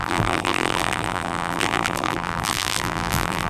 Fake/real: fake